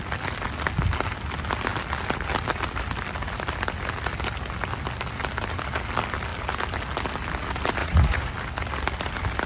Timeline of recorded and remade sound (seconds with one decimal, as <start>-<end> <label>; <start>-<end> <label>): 0.0-7.8 recorded; 7.8-8.3 remade; 8.3-9.5 recorded